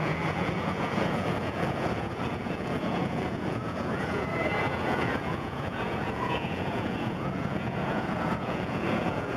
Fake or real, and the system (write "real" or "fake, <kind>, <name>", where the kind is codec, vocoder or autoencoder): fake, vocoder, Vocos